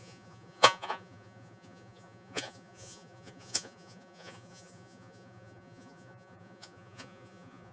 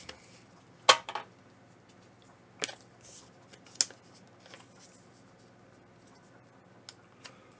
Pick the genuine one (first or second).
second